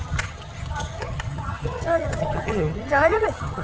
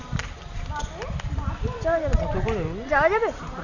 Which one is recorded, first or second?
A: second